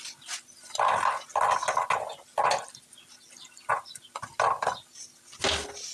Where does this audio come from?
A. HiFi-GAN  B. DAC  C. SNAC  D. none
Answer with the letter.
D